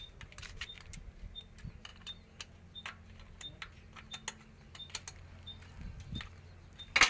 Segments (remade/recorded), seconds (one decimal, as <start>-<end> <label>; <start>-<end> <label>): 0.0-7.1 recorded